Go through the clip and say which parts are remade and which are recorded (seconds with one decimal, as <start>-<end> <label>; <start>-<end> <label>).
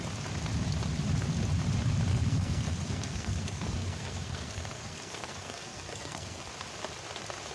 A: 0.0-2.1 recorded; 2.1-6.5 remade; 6.5-7.5 recorded